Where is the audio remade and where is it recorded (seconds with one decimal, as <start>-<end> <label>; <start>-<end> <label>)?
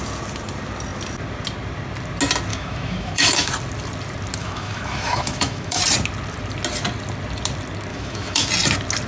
0.0-2.5 recorded; 2.5-3.5 remade; 3.5-4.4 recorded; 4.4-5.8 remade; 5.8-7.9 recorded; 7.9-8.5 remade; 8.5-9.1 recorded